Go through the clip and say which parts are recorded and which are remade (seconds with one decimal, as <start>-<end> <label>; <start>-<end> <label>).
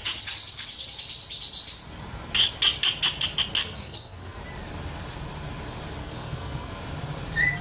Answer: 0.0-3.6 recorded; 3.6-4.4 remade; 4.4-6.0 recorded; 6.0-6.8 remade; 6.8-7.6 recorded